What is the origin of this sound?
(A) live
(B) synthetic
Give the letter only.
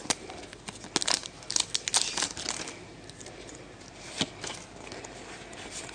A